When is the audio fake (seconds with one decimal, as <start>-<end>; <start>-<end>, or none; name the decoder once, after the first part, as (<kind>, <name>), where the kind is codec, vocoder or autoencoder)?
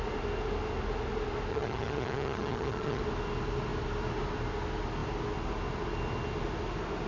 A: 1.5-3.0 (vocoder, HiFi-GAN)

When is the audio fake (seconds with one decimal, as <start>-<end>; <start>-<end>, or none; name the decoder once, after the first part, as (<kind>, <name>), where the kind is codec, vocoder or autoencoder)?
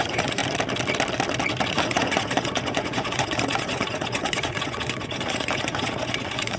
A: 0.0-0.4 (vocoder, Vocos); 1.7-6.6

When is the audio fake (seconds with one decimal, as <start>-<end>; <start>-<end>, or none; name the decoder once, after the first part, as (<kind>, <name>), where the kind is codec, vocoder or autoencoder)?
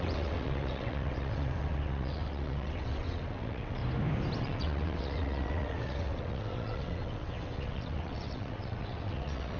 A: 0.0-3.8 (vocoder, WaveNeXt); 4.4-9.6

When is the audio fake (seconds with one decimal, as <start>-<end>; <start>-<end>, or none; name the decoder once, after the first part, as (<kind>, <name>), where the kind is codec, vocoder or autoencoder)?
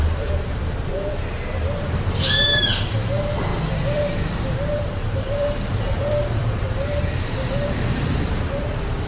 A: 0.0-0.9 (vocoder, BigVGAN v2); 1.8-9.1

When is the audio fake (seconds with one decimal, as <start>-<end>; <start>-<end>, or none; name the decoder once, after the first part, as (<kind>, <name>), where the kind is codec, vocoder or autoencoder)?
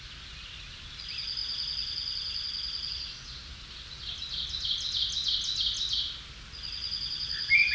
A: none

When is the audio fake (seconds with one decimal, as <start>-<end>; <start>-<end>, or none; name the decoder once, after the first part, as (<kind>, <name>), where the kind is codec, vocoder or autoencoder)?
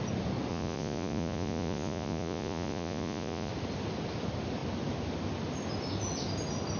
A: 0.5-3.5 (vocoder, Vocos)